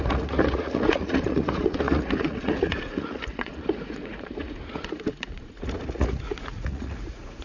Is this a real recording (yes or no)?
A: no